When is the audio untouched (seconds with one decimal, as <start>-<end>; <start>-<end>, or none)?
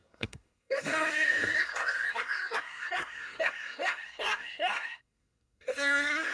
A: none